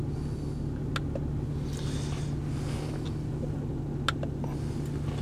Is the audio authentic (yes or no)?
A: yes